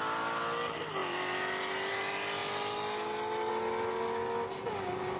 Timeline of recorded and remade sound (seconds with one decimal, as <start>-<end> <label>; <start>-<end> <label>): 0.0-5.2 recorded